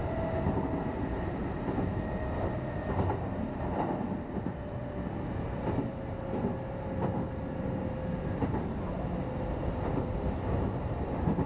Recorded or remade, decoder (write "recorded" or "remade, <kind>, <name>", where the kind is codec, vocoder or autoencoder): recorded